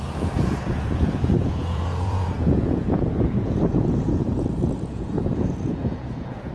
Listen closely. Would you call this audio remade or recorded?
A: remade